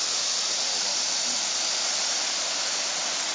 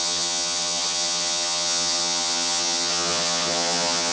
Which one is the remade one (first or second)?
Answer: second